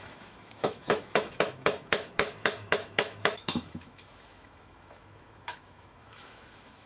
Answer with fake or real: fake